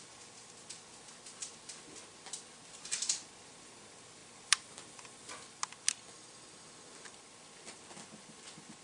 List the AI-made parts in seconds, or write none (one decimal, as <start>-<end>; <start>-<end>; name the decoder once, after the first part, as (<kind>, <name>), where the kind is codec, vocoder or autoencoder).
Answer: none